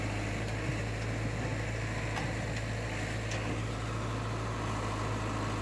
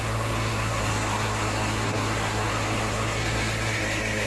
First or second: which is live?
first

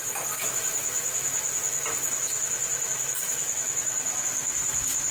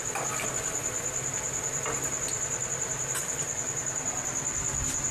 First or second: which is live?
second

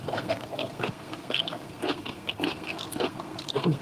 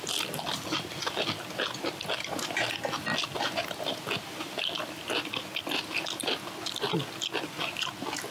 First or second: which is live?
second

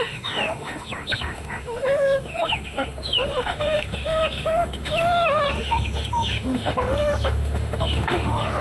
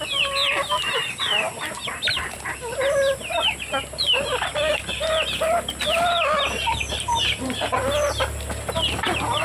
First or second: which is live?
second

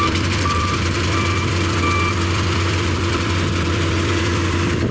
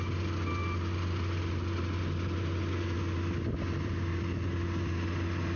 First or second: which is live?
second